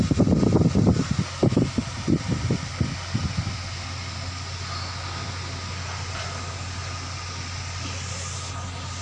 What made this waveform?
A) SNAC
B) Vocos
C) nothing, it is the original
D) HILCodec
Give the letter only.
C